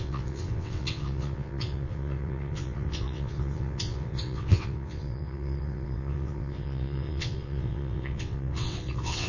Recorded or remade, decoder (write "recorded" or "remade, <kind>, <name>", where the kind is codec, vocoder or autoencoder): remade, vocoder, WaveNeXt